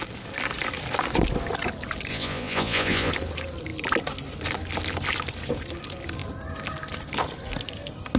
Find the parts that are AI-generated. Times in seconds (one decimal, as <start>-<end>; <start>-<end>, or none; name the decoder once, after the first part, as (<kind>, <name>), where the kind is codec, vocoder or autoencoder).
2.1-3.1 (vocoder, Vocos)

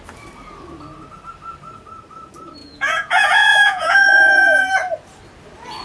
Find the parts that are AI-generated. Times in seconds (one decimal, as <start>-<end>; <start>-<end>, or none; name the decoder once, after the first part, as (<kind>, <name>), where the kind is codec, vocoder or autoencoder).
2.6-4.7 (vocoder, Vocos)

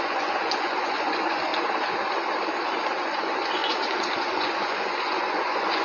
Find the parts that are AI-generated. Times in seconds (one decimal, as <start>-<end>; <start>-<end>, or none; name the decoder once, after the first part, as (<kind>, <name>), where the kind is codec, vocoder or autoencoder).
0.0-1.5 (vocoder, Vocos); 3.0-3.6; 4.2-5.8

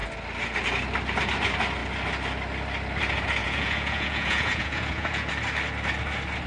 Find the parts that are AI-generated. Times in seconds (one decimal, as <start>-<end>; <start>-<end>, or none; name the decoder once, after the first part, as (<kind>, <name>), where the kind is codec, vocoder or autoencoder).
3.4-5.3 (vocoder, Vocos)

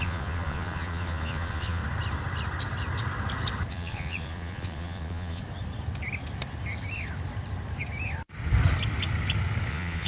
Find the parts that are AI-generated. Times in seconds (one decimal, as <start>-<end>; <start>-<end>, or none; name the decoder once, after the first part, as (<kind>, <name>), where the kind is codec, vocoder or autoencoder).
0.0-1.8 (vocoder, Vocos); 3.7-5.4; 9.7-10.1

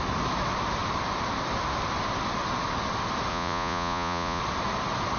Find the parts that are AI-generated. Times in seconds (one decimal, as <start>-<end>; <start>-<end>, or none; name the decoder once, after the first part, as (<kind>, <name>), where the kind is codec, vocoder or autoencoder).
3.3-4.4 (vocoder, Vocos)